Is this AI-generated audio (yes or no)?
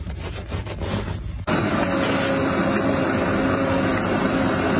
no